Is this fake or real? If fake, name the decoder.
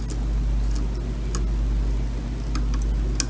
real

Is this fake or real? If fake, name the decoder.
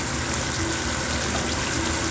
real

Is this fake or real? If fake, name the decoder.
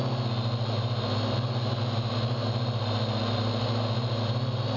real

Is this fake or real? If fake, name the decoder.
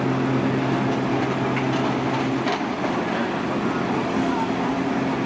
real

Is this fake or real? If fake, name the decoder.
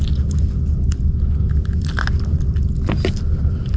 real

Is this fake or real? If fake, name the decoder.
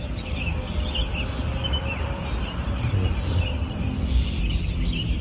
real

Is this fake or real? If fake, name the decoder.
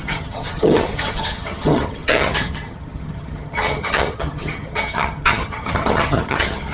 fake, vocoder, HiFi-GAN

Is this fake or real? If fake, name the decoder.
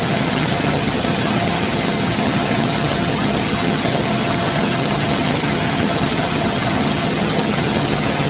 fake, vocoder, HiFi-GAN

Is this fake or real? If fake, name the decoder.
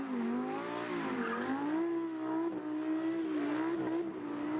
real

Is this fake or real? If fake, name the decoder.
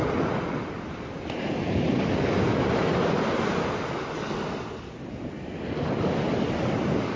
real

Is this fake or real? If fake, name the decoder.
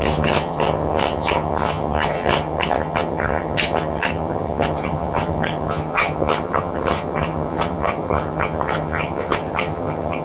fake, vocoder, HiFi-GAN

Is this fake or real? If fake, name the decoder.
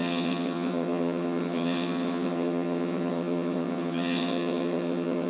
fake, vocoder, HiFi-GAN